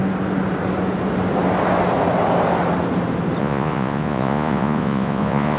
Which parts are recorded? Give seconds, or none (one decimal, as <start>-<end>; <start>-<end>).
0.0-3.4